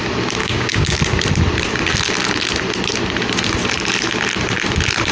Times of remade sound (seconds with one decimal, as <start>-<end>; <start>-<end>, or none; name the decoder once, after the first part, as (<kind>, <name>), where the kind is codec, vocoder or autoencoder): 0.4-1.0 (codec, DAC)